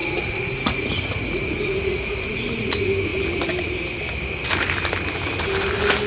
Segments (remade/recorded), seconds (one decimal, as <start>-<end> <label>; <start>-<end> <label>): 0.0-2.7 remade; 2.7-6.1 recorded